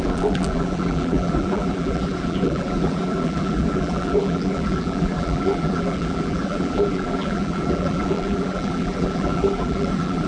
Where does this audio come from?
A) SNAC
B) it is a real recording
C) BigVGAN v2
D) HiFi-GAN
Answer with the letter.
C